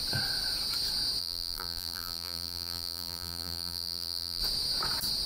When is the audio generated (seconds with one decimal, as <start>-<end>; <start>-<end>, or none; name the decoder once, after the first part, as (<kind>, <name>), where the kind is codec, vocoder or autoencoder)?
1.2-4.4 (vocoder, BigVGAN v2)